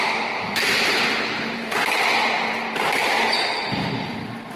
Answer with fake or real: fake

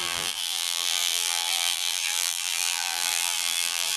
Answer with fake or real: fake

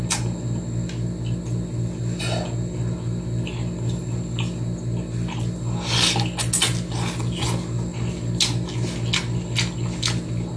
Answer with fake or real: real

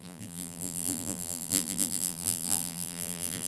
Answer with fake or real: fake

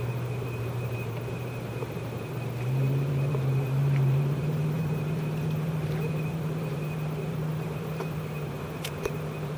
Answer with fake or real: fake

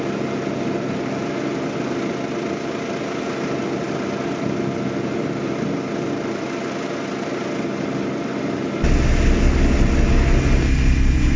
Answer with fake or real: real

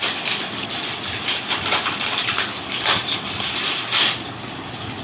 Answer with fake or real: real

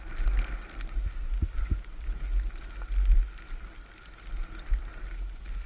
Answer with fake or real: real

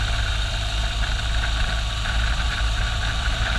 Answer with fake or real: fake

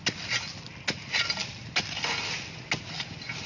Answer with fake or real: real